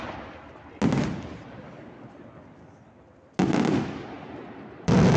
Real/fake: real